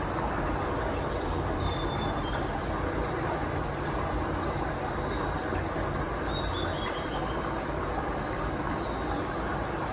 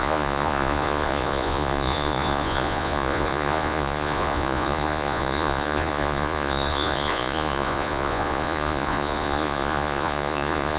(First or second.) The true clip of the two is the first